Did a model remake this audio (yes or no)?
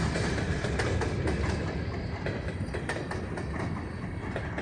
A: no